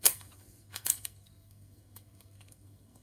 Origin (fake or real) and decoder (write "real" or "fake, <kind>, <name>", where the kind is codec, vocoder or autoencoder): fake, codec, SNAC